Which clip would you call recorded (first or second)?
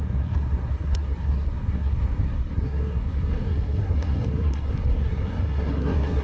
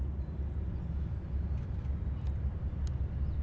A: second